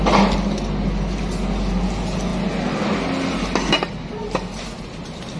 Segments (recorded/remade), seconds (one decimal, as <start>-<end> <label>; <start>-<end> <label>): 0.0-5.4 recorded